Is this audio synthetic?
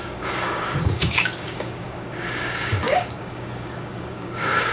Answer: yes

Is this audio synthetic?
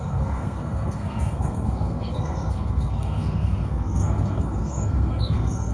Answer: yes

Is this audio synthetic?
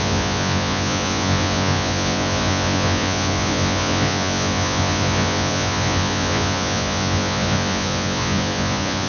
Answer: yes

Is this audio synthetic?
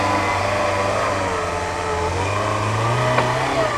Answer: no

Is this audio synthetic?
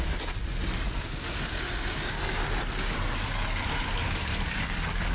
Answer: no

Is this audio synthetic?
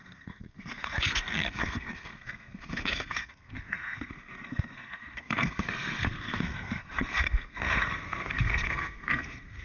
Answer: yes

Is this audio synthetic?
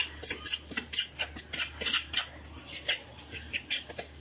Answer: no